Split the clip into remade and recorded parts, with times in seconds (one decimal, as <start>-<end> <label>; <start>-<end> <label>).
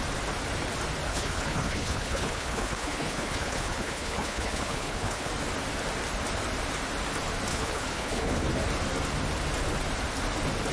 0.0-1.1 recorded; 1.1-5.3 remade; 5.3-7.5 recorded; 7.5-8.5 remade; 8.5-10.7 recorded